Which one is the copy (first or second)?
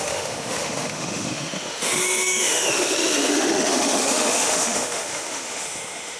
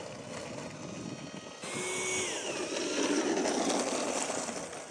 first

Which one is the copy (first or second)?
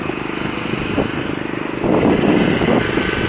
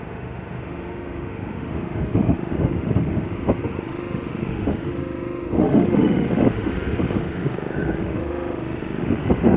second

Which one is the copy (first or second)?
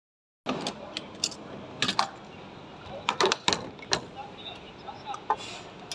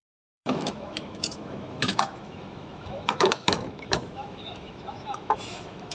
second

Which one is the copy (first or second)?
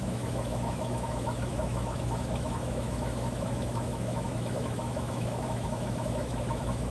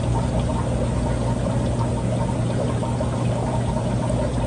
first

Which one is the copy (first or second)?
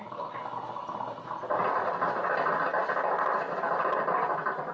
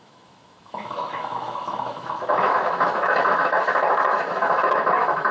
second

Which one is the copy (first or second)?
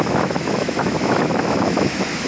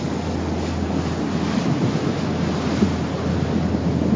first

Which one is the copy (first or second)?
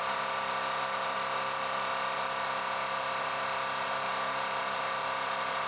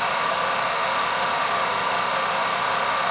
second